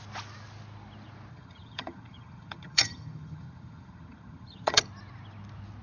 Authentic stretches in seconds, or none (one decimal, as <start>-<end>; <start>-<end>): 0.0-1.3; 4.8-5.8